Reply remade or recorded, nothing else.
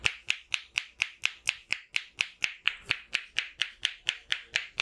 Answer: recorded